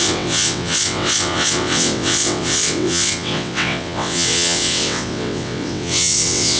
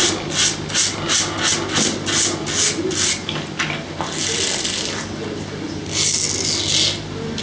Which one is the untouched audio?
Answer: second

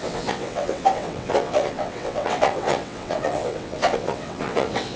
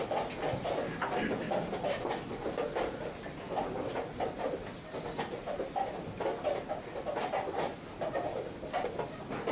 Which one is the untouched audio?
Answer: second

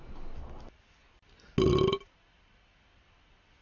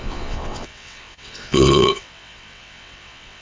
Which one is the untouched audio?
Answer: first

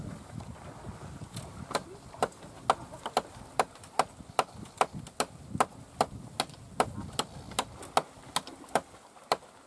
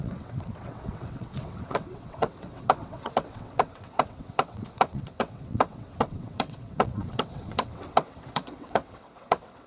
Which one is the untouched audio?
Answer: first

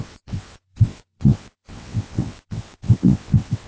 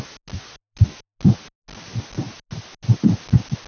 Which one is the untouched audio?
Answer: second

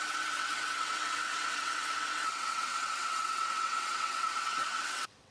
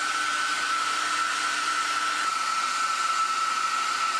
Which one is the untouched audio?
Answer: second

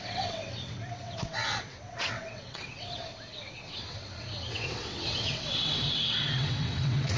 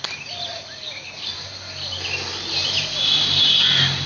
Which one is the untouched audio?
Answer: second